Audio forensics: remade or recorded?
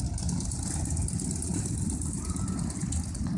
recorded